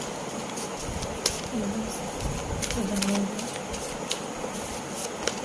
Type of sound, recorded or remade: recorded